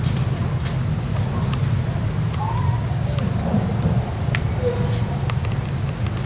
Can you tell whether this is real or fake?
real